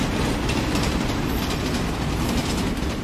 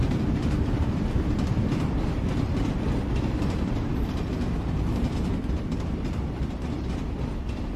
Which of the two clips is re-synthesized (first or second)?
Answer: second